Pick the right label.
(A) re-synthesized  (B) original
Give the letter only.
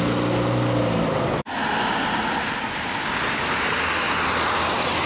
B